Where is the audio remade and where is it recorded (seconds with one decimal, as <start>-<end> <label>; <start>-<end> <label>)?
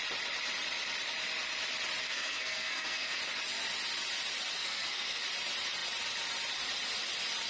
0.0-2.0 recorded; 2.0-3.2 remade; 3.2-4.6 recorded; 4.6-5.2 remade; 5.2-7.5 recorded